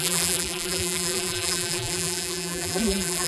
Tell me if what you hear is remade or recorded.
remade